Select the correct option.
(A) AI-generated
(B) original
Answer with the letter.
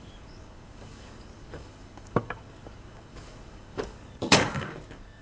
A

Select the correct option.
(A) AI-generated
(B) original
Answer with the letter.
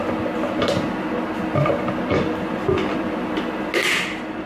B